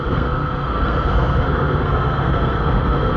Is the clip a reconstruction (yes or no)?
yes